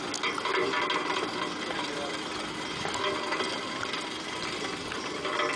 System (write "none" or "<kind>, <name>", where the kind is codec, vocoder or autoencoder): none